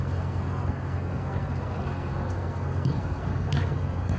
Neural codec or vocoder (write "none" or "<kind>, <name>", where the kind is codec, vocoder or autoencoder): codec, SNAC